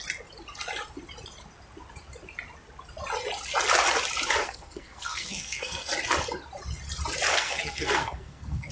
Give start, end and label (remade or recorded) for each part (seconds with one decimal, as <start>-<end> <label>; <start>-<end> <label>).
0.0-4.4 recorded; 4.4-5.9 remade; 5.9-7.3 recorded; 7.3-8.7 remade